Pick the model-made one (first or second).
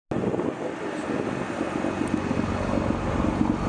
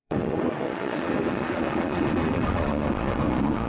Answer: second